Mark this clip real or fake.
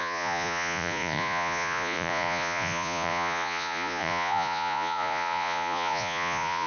fake